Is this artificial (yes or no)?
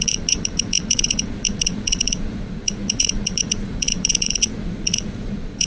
yes